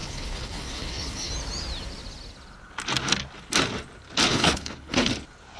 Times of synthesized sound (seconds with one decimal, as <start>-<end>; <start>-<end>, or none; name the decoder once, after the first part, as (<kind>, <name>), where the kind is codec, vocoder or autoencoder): 0.0-1.3 (codec, HILCodec); 4.3-5.1